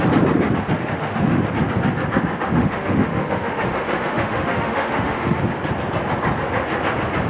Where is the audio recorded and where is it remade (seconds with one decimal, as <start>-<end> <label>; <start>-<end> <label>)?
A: 0.0-0.8 recorded; 0.8-1.5 remade; 1.5-2.6 recorded; 2.6-5.4 remade; 5.4-7.3 recorded